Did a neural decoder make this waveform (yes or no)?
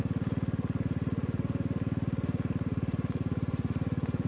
no